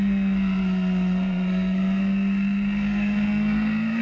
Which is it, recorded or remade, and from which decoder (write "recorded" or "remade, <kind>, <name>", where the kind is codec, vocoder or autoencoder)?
remade, codec, SNAC